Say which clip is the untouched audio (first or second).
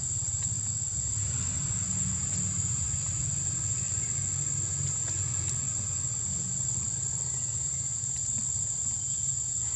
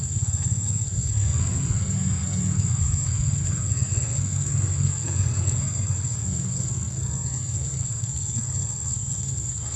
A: first